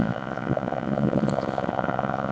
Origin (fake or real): fake